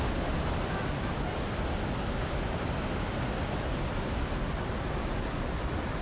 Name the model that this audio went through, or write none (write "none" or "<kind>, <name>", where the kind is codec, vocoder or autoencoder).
none